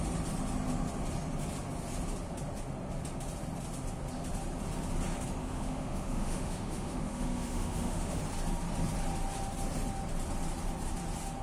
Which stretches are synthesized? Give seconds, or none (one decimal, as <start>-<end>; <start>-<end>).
5.4-8.2